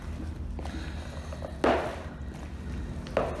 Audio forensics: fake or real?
real